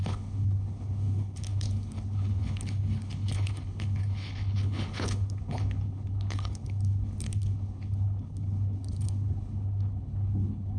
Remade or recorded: remade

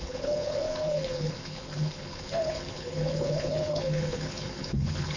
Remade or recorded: remade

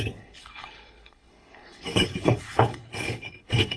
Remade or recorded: remade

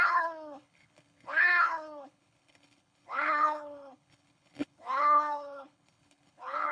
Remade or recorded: remade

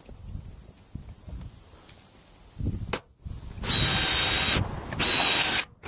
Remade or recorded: recorded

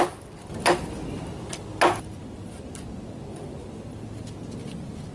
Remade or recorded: recorded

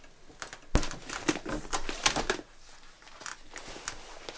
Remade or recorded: recorded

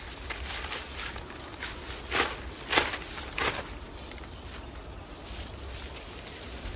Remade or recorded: recorded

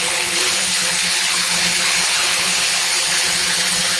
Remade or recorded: remade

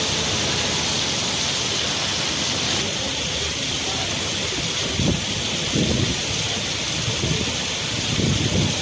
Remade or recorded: recorded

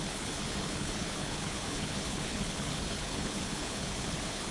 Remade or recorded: remade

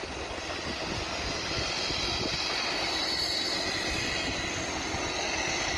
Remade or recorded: recorded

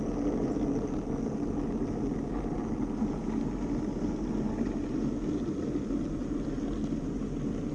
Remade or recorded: recorded